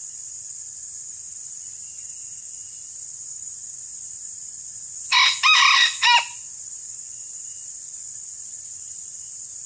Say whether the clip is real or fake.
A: real